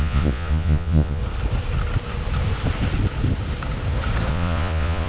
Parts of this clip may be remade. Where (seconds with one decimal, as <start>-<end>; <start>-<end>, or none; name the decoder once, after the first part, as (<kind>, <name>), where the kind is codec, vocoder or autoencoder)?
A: 0.0-1.2 (vocoder, Vocos); 4.3-5.1